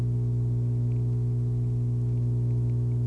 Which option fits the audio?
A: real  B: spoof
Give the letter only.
A